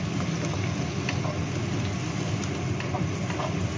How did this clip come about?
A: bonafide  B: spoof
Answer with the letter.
A